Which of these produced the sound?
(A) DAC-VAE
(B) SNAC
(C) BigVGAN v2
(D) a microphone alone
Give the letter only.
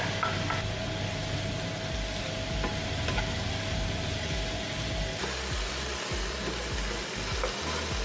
D